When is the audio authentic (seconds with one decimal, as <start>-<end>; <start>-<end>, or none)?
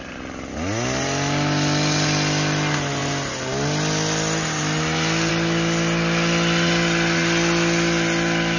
0.0-8.6